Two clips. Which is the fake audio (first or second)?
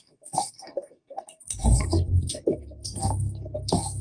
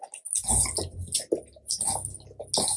first